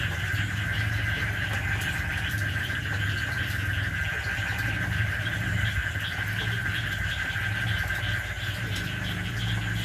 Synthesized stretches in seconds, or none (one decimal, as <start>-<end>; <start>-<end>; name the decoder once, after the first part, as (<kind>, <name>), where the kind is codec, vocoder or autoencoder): none